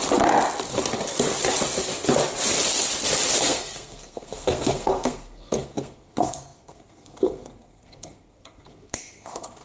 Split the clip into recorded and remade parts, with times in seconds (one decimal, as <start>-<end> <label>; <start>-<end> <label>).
0.0-3.4 recorded; 3.4-9.6 remade